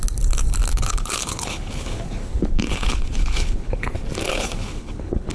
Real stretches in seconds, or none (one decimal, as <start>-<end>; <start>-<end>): 0.0-0.7; 3.9-4.3

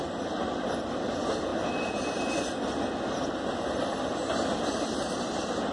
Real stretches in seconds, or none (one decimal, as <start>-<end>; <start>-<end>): 0.0-5.7

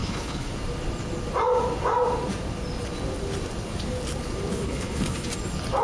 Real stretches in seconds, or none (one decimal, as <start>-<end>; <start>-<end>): 0.5-4.5; 5.3-5.8

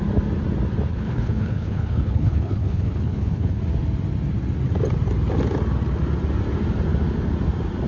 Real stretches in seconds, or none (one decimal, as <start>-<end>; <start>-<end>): 0.0-0.9; 3.6-7.9